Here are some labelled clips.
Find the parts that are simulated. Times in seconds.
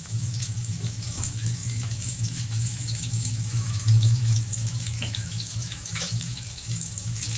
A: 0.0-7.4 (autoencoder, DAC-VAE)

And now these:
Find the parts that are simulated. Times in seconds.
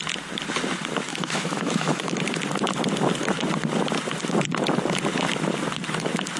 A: 1.1-2.1 (autoencoder, DAC-VAE)